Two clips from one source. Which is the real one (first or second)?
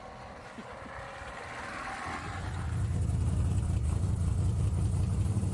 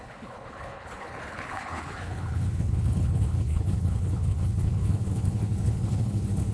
first